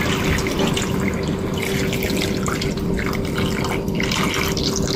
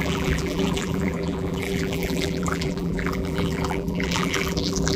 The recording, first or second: first